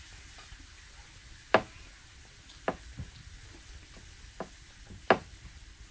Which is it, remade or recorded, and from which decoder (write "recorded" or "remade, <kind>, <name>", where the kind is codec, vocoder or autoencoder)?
recorded